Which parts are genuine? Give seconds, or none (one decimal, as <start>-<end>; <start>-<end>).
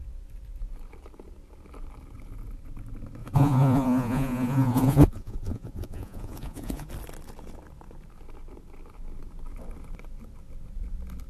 0.0-3.2; 6.9-11.3